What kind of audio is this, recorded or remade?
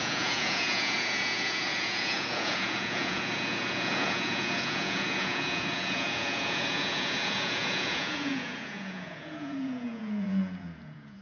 remade